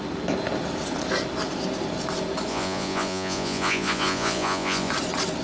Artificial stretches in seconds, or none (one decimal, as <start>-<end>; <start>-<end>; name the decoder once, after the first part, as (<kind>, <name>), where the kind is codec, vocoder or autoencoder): 2.5-4.9 (vocoder, Vocos)